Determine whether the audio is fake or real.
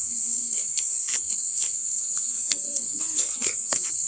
fake